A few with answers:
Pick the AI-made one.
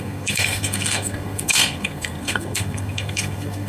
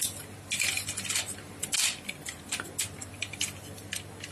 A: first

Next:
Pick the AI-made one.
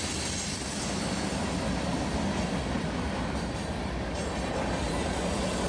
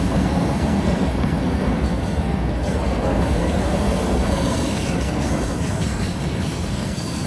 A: second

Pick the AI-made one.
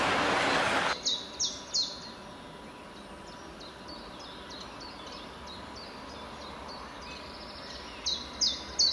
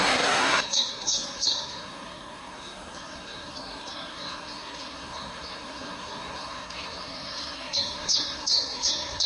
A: second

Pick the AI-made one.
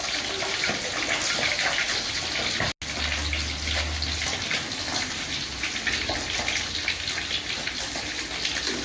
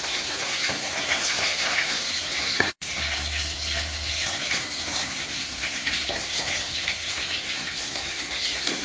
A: second